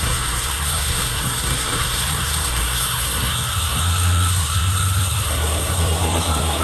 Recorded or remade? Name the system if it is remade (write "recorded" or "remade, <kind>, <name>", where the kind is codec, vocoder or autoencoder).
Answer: remade, codec, SNAC